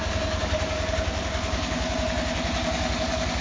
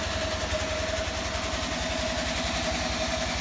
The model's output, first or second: first